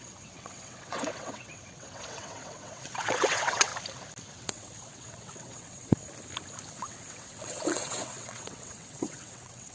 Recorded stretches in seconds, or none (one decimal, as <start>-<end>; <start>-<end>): 3.7-4.3; 6.0-6.7